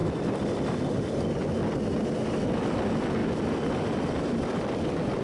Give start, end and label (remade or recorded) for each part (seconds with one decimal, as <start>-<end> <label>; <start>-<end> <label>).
0.0-5.2 recorded